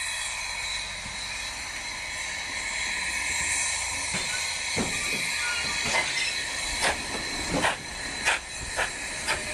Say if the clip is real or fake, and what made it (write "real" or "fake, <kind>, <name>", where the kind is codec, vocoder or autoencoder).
real